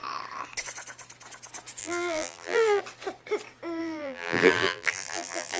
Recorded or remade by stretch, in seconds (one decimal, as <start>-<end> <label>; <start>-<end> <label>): 0.0-1.8 recorded; 1.8-2.8 remade; 2.8-3.8 recorded; 3.8-5.6 remade